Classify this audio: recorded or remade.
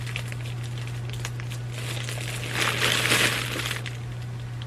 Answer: recorded